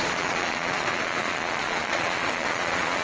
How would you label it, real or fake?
fake